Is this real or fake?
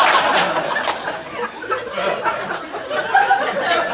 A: real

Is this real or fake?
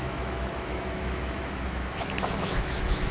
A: fake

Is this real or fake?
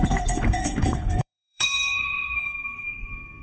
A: fake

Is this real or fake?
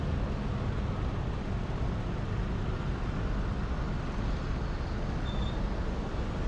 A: real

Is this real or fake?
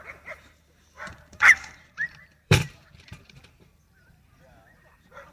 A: fake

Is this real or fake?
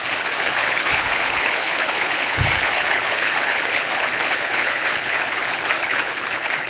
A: fake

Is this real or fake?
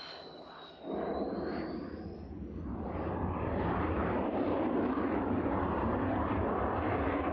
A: real